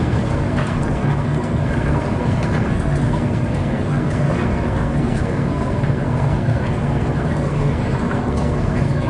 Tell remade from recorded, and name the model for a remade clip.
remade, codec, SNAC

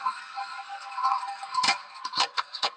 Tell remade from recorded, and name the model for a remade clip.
remade, codec, SNAC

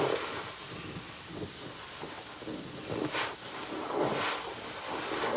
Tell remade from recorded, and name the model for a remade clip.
recorded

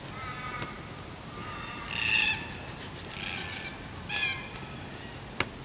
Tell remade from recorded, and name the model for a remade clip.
recorded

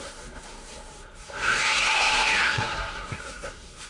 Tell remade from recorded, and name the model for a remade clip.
remade, codec, SNAC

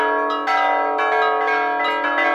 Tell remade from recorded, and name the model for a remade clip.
recorded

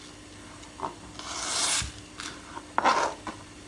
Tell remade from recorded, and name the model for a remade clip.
recorded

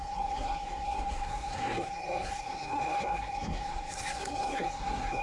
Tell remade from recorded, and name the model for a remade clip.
remade, codec, SNAC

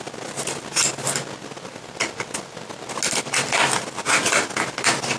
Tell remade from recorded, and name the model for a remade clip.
recorded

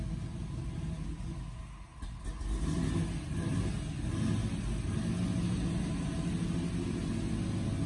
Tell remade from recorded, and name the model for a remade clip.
recorded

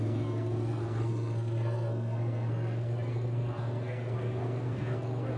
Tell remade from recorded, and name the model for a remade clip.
remade, codec, SNAC